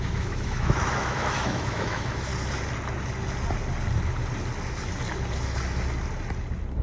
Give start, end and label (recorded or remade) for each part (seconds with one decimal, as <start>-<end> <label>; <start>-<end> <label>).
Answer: 0.0-2.3 remade; 2.3-6.8 recorded